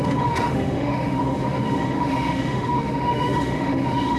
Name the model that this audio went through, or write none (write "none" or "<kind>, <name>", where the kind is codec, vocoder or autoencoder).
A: autoencoder, DAC-VAE